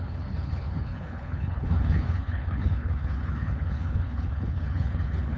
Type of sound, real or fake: fake